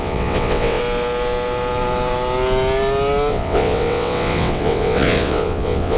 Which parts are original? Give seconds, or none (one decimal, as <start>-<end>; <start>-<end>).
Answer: 0.8-3.3